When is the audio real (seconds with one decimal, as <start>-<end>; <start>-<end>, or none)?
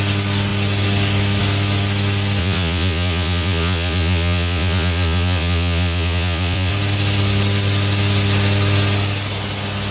0.0-2.4; 6.7-9.9